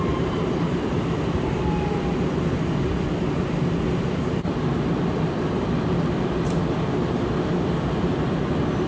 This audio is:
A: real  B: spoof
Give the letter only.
A